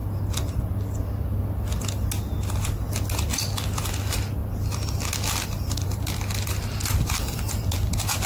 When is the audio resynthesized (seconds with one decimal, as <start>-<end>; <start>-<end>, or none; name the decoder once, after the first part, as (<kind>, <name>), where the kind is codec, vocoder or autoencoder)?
3.9-4.4 (vocoder, BigVGAN v2); 5.6-8.3